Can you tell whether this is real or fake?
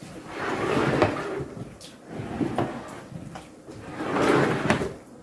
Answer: real